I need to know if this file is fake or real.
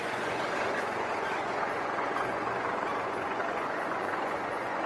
fake